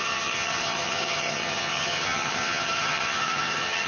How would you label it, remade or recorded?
remade